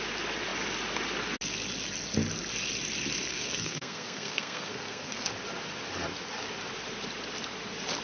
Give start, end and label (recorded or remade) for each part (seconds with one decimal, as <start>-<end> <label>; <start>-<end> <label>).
0.0-3.3 recorded; 3.3-5.3 remade; 5.3-8.0 recorded